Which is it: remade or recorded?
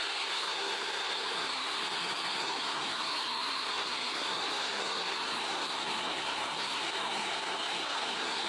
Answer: remade